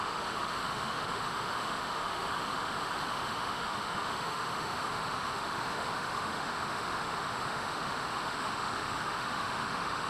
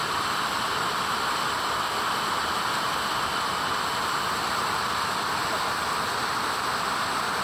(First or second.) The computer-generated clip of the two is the first